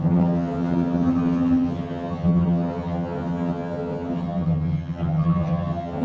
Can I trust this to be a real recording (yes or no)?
no